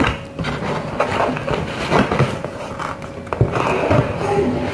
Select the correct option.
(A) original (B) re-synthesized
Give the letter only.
A